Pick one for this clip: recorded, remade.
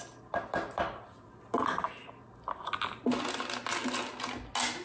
recorded